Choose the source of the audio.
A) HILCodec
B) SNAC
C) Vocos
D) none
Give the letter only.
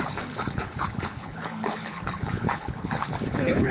A